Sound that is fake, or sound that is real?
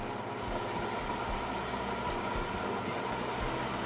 real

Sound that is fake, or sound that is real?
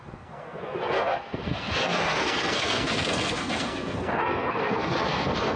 fake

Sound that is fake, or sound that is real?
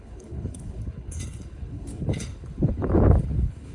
fake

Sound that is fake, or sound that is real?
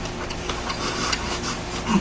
real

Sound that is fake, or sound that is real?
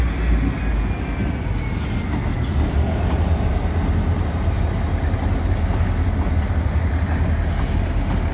real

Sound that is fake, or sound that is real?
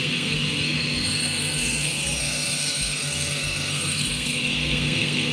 fake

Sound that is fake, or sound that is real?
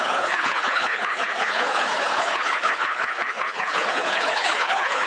fake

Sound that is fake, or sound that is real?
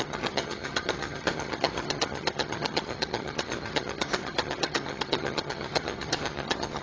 fake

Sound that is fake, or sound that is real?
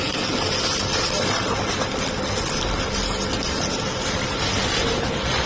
real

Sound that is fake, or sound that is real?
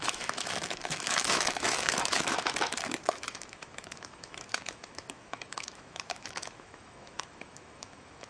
fake